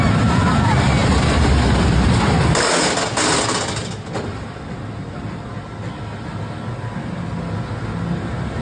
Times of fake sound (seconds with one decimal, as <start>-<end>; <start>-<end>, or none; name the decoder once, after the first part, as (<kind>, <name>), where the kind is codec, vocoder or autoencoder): none